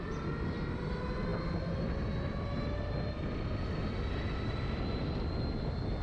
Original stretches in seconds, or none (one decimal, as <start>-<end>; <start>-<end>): 0.0-6.0